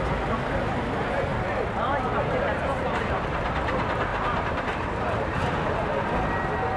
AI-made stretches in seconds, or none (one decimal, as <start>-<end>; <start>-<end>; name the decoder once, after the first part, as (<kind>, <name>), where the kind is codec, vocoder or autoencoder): 1.3-3.5 (vocoder, BigVGAN v2); 4.1-6.1